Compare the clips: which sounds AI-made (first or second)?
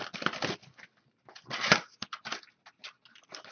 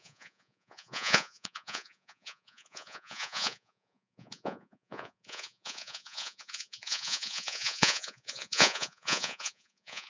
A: second